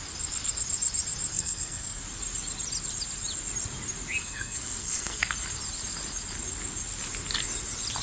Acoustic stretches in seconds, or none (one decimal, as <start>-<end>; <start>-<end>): 0.0-1.3; 2.0-4.2; 5.3-8.0